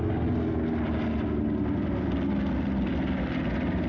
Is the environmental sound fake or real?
real